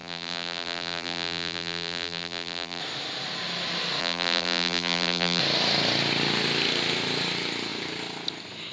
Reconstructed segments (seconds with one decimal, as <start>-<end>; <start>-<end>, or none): 0.0-2.8; 4.0-5.4

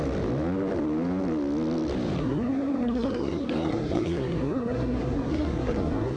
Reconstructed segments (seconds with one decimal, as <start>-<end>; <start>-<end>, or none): 2.2-6.2

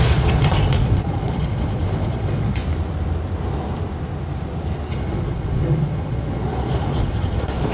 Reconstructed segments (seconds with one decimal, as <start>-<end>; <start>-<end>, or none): 0.0-2.6; 4.9-7.7

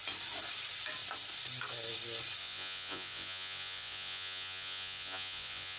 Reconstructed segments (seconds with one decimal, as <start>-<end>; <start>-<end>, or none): 2.4-5.8

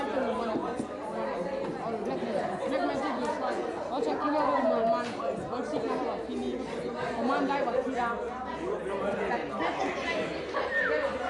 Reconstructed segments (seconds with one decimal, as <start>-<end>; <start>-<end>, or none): none

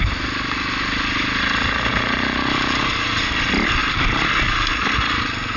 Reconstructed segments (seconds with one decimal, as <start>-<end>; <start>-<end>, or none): 1.9-2.8; 3.8-4.3

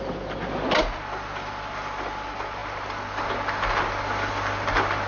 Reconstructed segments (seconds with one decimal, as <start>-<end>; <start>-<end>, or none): none

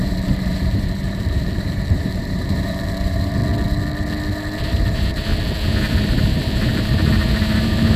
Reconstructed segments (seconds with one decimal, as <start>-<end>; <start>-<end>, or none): 0.0-3.4; 4.6-5.3; 5.9-8.0